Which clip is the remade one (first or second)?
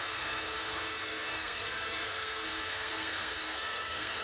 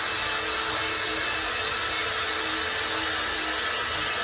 first